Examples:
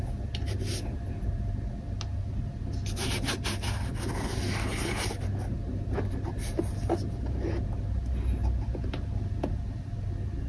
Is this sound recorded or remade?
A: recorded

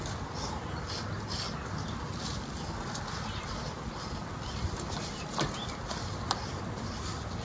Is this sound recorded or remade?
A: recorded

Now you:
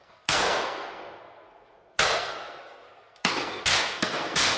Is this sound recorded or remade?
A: remade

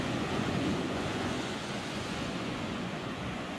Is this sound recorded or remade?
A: remade